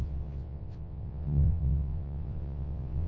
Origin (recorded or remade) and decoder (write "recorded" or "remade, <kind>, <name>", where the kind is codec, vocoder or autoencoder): remade, vocoder, WaveNeXt